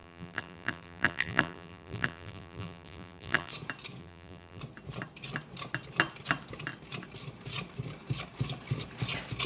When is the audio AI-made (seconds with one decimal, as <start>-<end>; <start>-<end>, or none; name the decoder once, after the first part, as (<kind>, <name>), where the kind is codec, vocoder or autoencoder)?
0.0-3.5 (vocoder, BigVGAN v2); 4.0-4.6